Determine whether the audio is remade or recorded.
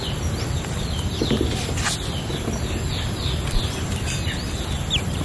recorded